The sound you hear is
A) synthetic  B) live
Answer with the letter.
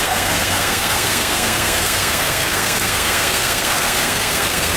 A